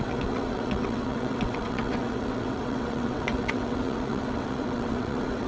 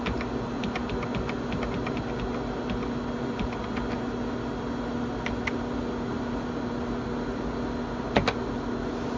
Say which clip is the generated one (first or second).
first